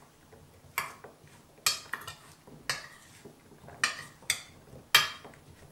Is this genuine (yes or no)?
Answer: yes